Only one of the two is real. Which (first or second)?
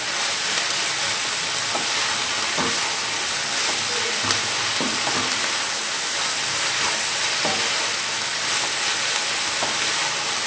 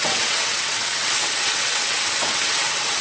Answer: first